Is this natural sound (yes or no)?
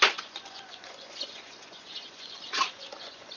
no